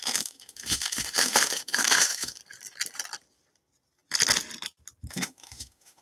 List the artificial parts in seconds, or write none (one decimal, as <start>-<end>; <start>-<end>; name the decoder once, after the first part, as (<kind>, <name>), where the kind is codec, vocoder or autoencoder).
0.0-2.4 (autoencoder, DAC-VAE); 5.1-6.0